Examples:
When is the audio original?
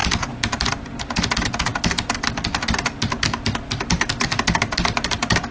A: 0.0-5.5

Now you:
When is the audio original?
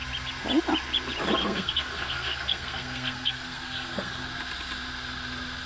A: 0.0-1.4; 4.2-5.7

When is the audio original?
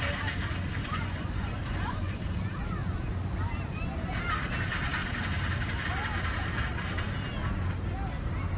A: 0.0-0.8; 2.2-8.6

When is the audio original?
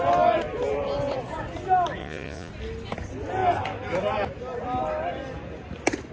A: 0.0-2.0; 2.5-6.1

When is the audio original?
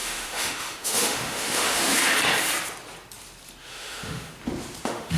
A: 1.8-3.6; 4.3-4.8